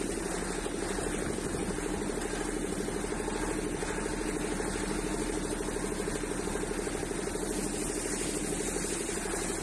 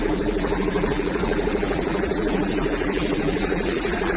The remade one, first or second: second